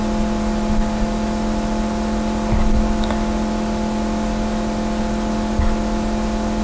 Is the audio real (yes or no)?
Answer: yes